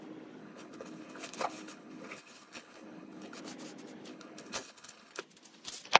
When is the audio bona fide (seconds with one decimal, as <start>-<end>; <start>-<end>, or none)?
0.0-0.4; 3.4-4.1; 5.2-6.0